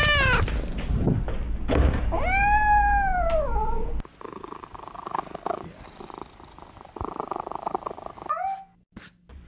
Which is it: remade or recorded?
recorded